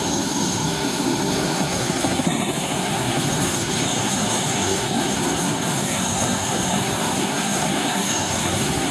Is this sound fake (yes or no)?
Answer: yes